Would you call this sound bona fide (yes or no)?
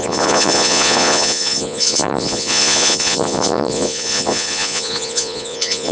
no